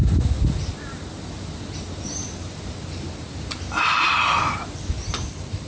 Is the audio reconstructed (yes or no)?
no